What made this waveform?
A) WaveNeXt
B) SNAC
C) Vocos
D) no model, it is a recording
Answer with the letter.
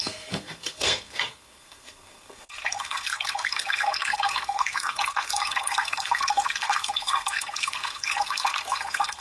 B